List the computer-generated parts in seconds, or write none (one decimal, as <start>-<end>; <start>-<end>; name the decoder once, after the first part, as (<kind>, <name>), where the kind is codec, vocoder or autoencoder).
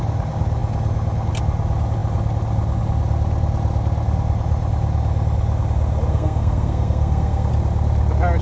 6.1-7.5 (codec, SNAC)